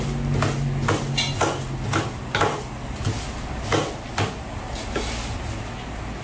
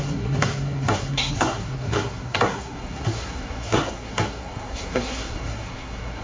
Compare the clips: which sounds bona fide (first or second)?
first